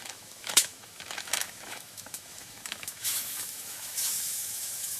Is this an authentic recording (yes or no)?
no